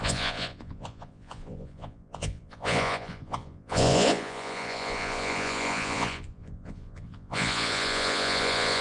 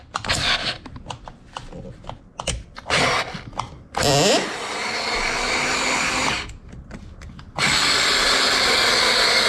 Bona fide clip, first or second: second